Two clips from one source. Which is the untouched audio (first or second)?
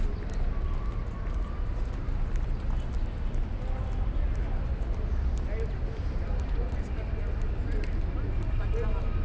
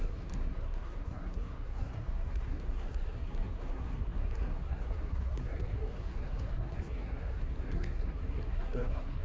first